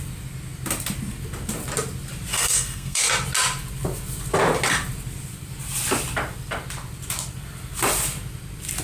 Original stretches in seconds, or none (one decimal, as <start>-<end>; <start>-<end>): 0.0-2.3; 3.0-8.8